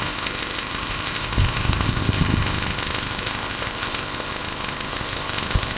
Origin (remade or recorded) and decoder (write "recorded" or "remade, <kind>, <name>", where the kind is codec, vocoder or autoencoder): remade, codec, ZipCodec